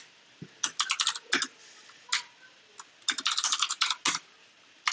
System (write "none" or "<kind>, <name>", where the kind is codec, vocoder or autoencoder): none